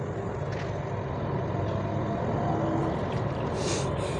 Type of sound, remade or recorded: recorded